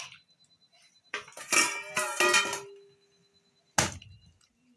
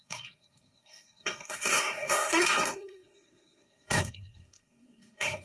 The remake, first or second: second